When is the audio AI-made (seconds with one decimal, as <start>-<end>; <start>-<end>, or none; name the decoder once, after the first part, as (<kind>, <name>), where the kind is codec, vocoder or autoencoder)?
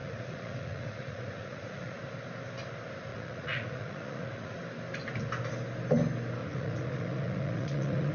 0.0-2.0 (vocoder, Vocos); 3.1-4.6; 6.4-8.1